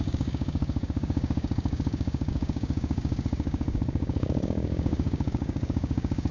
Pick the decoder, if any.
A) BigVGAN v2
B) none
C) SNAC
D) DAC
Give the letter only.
D